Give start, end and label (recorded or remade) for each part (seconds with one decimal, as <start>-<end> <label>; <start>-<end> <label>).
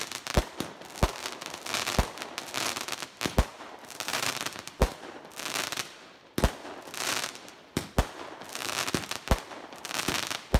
0.0-3.5 recorded; 3.5-5.2 remade; 5.2-10.6 recorded